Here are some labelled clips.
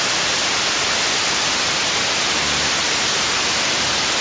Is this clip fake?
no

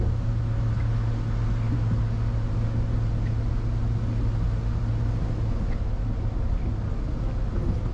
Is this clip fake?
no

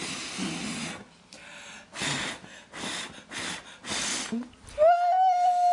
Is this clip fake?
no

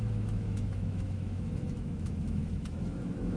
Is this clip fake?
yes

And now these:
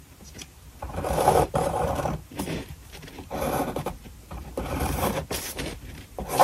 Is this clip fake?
yes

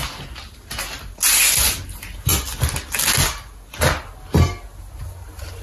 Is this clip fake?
no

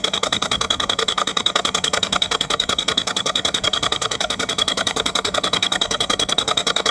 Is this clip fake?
yes